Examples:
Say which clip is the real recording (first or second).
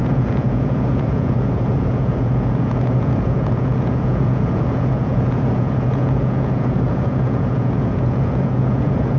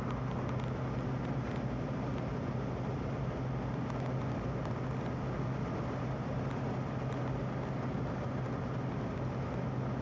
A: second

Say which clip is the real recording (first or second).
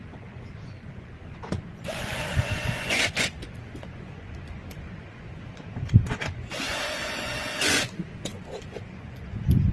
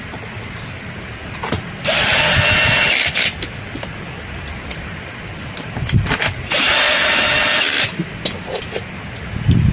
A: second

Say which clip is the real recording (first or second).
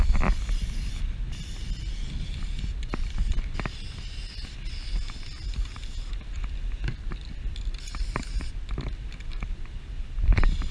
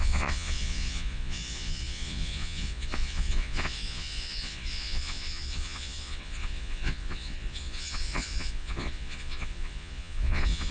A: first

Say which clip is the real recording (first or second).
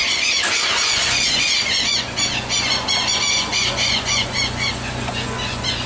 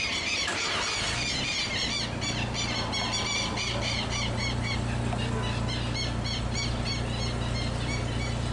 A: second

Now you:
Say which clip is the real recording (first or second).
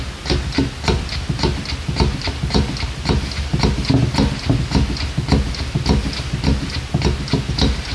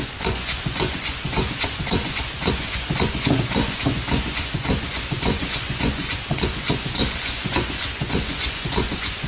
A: first